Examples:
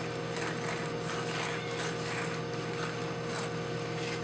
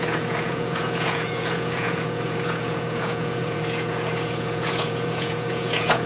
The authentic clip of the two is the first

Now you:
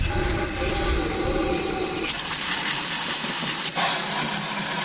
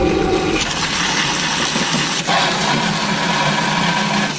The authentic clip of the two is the second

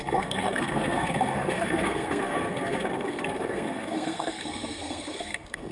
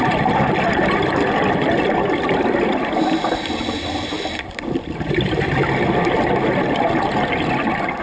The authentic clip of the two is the second